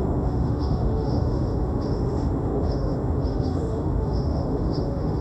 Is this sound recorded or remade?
remade